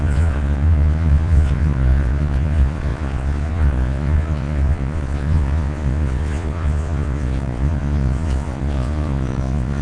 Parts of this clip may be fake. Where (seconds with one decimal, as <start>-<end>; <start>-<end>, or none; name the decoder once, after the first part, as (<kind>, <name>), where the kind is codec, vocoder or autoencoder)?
0.0-9.8 (vocoder, Vocos)